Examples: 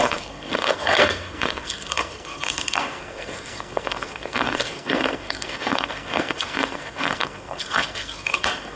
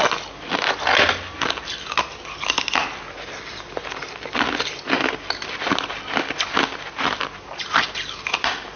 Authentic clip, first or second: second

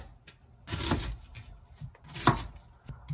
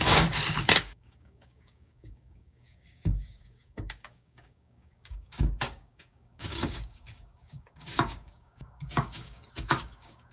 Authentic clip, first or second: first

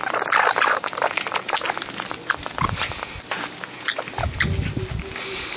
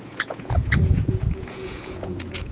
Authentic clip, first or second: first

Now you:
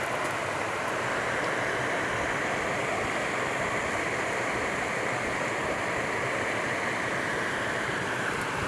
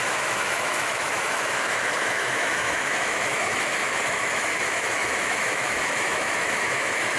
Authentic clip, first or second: first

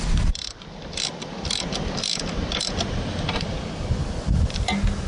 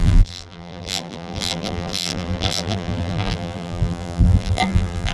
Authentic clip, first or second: first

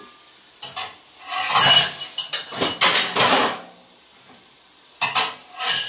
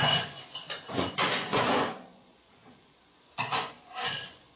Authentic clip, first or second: first